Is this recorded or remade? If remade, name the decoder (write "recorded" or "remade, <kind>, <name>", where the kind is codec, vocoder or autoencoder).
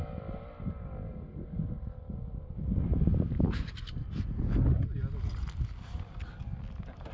recorded